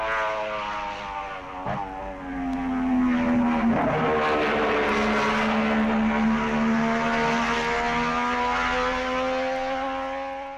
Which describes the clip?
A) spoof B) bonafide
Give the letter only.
B